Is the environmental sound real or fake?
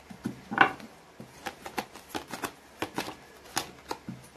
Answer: real